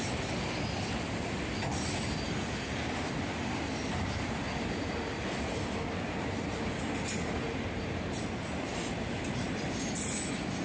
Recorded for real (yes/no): yes